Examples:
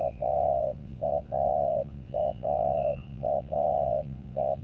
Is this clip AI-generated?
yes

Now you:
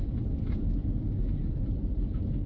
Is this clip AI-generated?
no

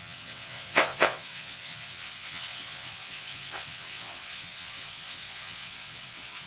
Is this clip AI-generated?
yes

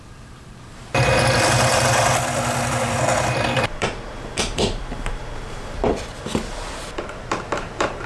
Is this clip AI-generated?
yes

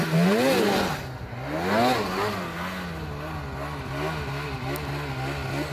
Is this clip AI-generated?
no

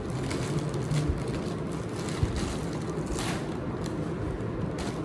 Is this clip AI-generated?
no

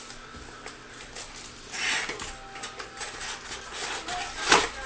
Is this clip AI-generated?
no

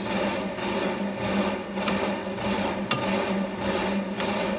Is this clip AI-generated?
no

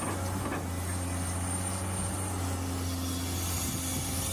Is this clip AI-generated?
no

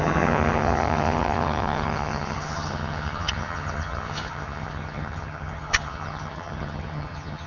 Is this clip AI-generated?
yes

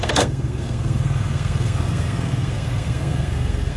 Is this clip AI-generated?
yes